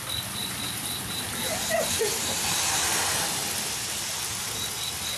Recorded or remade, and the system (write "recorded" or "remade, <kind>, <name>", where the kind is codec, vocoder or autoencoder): remade, vocoder, BigVGAN v2